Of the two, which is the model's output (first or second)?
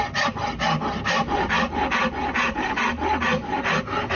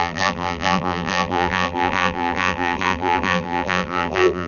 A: second